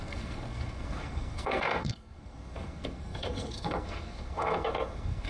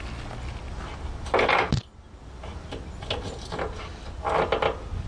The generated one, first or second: first